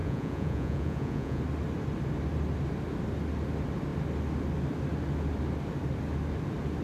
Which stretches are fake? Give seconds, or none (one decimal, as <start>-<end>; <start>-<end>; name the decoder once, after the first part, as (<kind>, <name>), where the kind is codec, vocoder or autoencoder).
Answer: 0.0-1.4 (vocoder, Vocos)